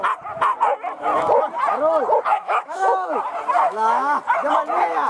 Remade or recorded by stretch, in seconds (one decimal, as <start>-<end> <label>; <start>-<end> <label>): 0.0-2.3 recorded; 2.3-3.2 remade; 3.2-3.7 recorded; 3.7-4.2 remade; 4.2-5.1 recorded